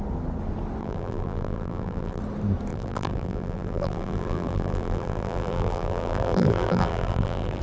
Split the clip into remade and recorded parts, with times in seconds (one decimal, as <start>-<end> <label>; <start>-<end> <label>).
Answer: 0.0-0.8 recorded; 0.8-2.2 remade; 2.2-2.7 recorded; 2.7-7.6 remade